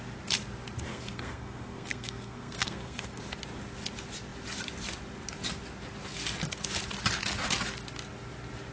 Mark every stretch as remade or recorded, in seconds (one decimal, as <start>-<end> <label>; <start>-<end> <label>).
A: 0.0-0.9 recorded; 0.9-3.2 remade; 3.2-8.7 recorded